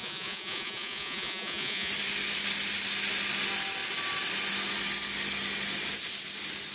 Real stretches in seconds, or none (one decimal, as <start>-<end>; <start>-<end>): 1.9-6.7